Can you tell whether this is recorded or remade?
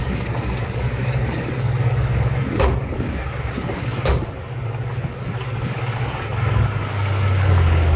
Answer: remade